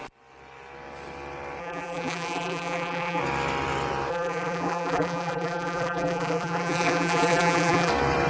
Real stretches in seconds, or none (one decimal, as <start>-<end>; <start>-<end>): 0.0-1.6; 3.2-4.1; 7.9-8.3